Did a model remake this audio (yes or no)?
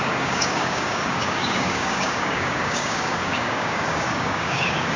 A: yes